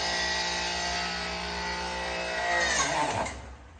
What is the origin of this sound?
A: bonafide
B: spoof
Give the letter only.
A